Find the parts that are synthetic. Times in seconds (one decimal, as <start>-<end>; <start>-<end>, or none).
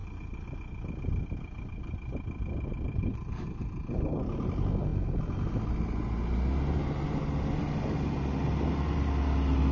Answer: none